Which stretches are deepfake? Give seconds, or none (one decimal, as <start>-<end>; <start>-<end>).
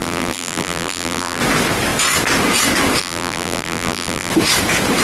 0.0-1.4; 3.0-4.3